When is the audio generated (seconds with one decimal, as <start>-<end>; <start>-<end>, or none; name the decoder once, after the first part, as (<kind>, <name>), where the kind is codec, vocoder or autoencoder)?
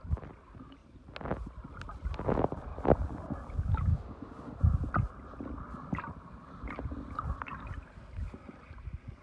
3.9-4.6 (autoencoder, DAC-VAE)